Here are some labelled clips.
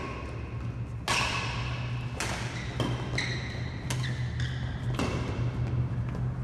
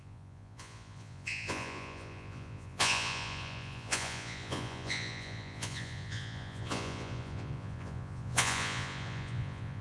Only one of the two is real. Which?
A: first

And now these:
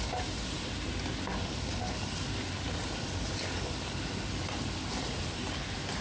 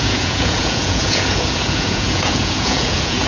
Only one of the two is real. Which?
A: first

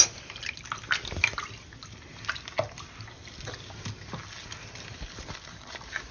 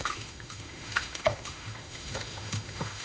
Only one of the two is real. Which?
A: first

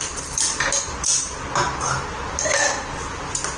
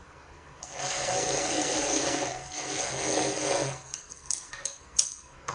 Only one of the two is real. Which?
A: first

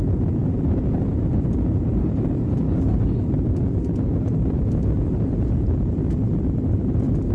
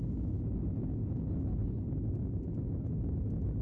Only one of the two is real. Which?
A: second